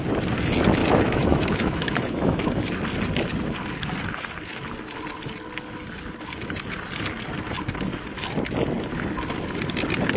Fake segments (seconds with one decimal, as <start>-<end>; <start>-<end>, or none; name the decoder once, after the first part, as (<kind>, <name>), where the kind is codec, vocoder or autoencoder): 0.8-2.7 (autoencoder, DAC-VAE)